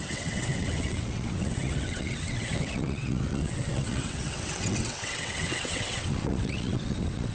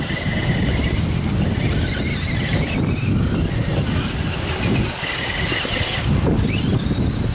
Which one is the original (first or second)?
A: second